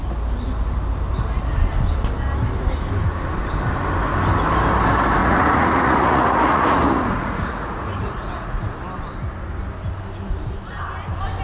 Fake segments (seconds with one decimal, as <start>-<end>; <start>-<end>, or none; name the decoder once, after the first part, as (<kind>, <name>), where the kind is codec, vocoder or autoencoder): 5.2-8.7 (vocoder, Vocos)